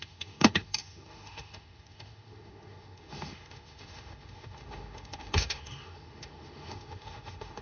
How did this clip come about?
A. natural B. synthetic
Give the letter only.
B